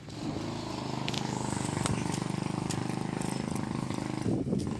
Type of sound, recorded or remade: recorded